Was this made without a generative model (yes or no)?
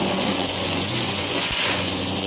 no